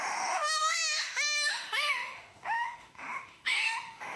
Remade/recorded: remade